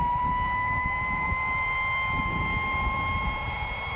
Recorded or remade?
remade